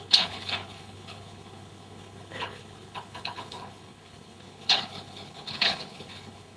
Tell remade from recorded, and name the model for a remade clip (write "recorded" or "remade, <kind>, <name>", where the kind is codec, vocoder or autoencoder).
remade, codec, HILCodec